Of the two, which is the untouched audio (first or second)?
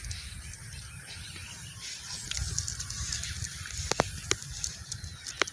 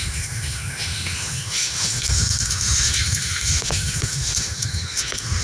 first